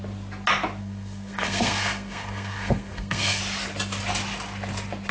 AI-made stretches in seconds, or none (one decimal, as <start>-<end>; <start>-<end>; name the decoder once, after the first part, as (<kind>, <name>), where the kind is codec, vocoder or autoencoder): 0.8-3.4 (codec, SNAC)